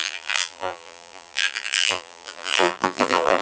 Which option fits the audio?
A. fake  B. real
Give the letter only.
A